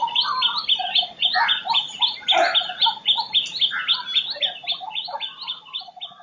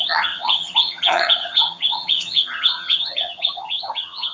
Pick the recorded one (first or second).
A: first